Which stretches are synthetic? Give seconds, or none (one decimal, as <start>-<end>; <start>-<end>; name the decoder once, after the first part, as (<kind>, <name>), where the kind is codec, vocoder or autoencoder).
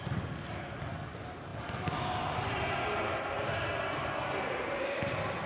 none